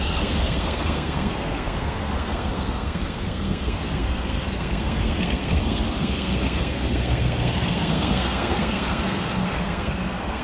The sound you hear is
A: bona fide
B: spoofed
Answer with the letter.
B